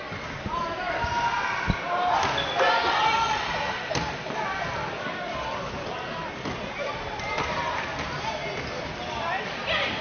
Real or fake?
real